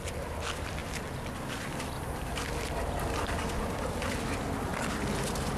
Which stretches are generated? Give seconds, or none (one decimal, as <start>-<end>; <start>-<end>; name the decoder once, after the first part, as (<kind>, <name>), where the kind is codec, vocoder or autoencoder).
none